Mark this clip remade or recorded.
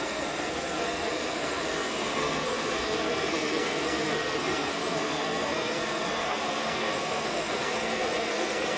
remade